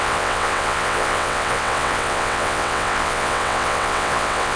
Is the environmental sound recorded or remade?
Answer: remade